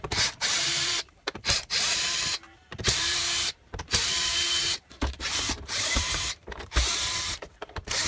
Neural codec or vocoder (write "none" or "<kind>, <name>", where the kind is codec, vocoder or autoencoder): vocoder, BigVGAN v2